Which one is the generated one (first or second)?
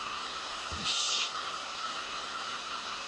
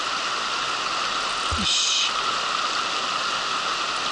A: first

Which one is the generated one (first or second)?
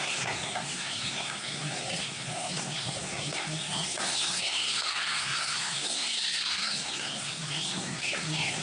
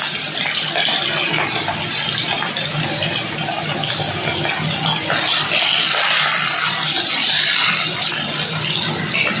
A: first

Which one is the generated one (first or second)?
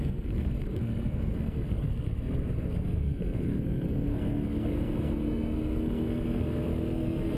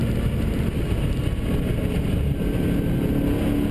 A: first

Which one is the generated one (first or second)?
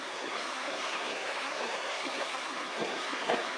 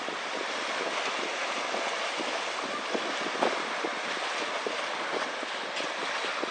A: first